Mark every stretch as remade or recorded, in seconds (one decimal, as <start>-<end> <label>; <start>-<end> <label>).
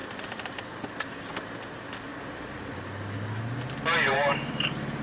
0.0-0.6 remade; 0.6-2.1 recorded; 2.1-2.7 remade; 2.7-4.1 recorded; 4.1-5.0 remade